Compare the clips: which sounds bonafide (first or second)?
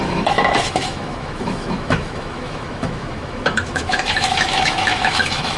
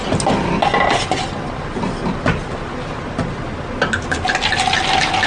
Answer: second